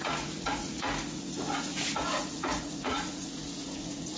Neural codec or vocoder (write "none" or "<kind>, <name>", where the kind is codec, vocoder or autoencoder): vocoder, Vocos